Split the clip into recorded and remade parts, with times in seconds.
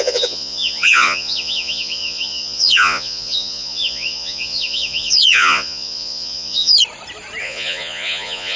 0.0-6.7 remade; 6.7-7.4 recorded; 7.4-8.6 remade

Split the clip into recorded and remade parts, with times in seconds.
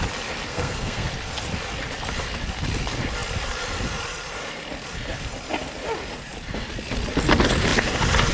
0.0-0.5 recorded; 0.5-1.1 remade; 1.1-8.3 recorded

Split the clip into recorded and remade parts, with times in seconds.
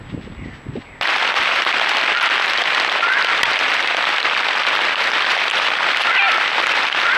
0.0-7.2 recorded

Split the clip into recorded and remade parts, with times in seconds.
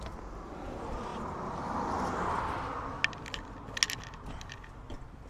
0.0-5.3 recorded